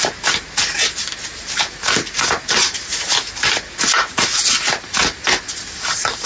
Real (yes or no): yes